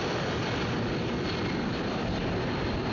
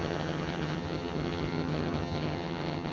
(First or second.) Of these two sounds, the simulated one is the second